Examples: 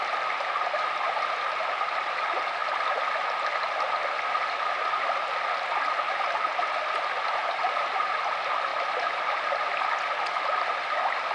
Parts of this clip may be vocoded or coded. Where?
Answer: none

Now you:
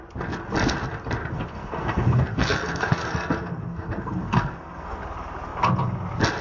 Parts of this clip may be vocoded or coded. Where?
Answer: 1.2-5.0

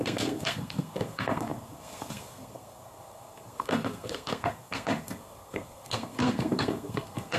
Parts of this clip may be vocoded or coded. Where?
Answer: 0.0-7.4

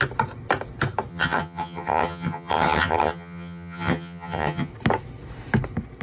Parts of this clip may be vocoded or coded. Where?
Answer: 1.1-4.7

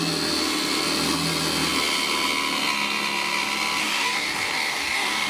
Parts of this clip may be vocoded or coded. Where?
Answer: 3.8-5.3

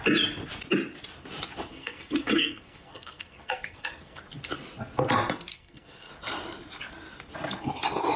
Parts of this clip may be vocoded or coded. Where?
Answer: 1.7-4.2; 5.5-6.1

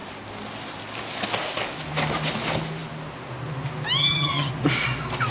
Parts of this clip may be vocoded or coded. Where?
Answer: 4.0-4.5